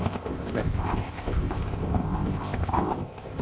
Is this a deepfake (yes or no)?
yes